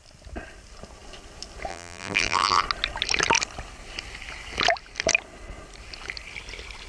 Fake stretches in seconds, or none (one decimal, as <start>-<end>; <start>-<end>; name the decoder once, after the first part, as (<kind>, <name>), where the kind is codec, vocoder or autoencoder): 1.7-2.6 (vocoder, BigVGAN v2)